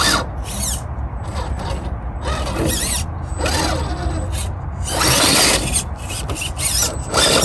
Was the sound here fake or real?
real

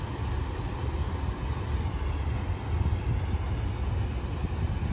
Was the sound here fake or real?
real